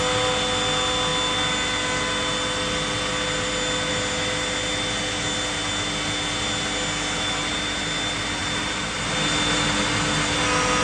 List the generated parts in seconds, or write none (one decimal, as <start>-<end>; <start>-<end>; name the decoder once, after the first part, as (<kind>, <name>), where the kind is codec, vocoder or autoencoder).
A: 8.4-9.1 (vocoder, BigVGAN v2)